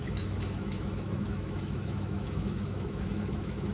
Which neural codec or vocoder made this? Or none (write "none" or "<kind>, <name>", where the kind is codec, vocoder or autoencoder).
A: autoencoder, DAC-VAE